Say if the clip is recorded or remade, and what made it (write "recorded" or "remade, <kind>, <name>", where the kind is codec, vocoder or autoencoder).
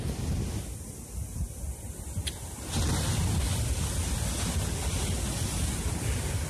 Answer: recorded